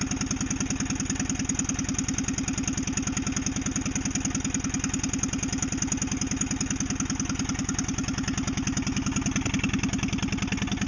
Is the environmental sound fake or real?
real